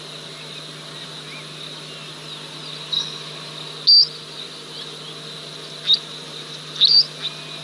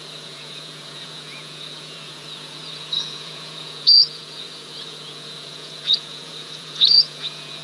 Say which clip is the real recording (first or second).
first